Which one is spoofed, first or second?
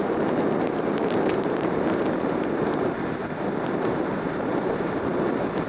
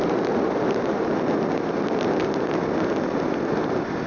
first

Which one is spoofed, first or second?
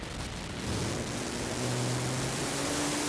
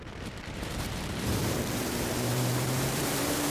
second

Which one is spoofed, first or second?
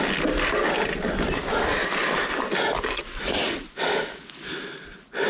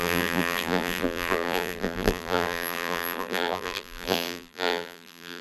second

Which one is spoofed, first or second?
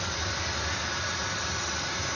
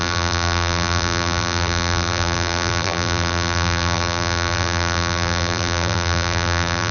second